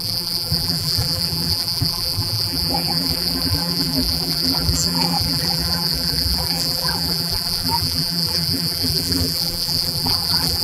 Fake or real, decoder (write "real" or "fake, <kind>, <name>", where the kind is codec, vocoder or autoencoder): fake, vocoder, BigVGAN v2